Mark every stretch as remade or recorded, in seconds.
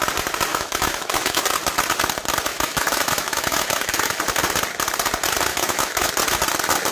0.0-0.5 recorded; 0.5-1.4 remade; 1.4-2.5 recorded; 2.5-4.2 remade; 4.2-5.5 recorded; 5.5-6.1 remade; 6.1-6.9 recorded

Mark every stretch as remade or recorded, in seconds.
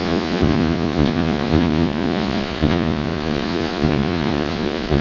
0.0-5.0 remade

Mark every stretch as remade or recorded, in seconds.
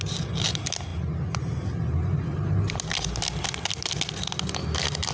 0.0-5.1 recorded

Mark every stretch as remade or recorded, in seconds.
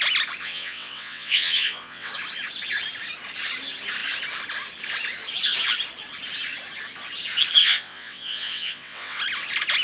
0.0-0.4 recorded; 0.4-2.1 remade; 2.1-7.6 recorded; 7.6-9.2 remade; 9.2-9.8 recorded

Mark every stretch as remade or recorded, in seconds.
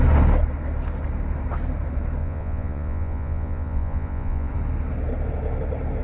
0.0-2.2 recorded; 2.2-4.5 remade; 4.5-6.0 recorded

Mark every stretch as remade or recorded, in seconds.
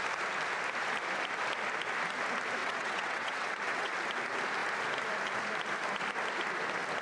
0.0-2.6 recorded; 2.6-3.9 remade; 3.9-7.0 recorded